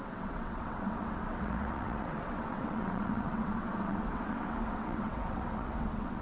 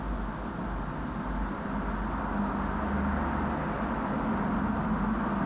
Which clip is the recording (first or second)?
second